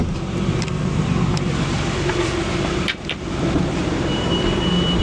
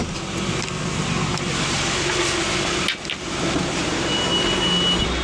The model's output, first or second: first